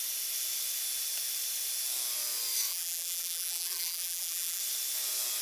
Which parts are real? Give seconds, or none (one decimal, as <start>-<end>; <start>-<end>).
0.0-2.7; 4.6-5.4